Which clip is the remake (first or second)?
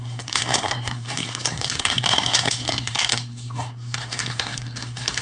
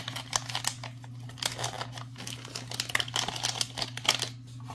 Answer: first